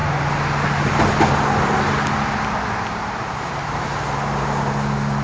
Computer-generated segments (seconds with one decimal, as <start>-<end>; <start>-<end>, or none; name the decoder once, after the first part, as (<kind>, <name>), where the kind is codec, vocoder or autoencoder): none